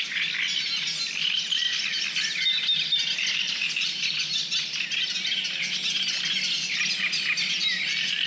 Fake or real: real